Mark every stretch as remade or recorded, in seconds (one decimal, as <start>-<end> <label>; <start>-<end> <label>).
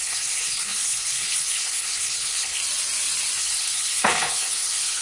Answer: 0.0-2.6 remade; 2.6-3.4 recorded; 3.4-5.0 remade